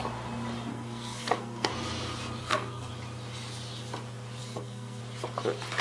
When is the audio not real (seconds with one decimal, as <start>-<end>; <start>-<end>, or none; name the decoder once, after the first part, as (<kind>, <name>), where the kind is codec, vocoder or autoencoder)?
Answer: 0.7-1.7 (codec, SNAC); 2.4-2.9; 4.4-5.0